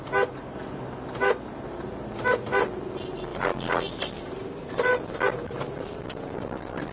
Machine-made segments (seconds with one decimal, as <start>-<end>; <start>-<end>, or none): none